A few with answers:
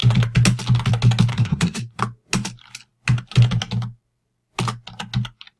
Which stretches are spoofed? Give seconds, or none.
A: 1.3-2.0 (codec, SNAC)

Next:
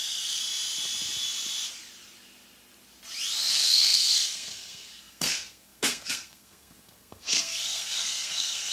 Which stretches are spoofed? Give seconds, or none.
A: 0.0-0.4 (codec, SNAC); 3.5-8.7